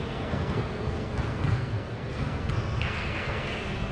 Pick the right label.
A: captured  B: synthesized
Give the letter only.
B